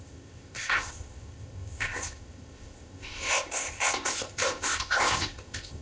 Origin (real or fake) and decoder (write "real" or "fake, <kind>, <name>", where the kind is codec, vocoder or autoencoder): fake, codec, ZipCodec